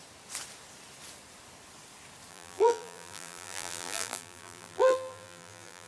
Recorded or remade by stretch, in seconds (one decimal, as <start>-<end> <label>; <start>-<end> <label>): 0.0-2.3 recorded; 2.3-5.9 remade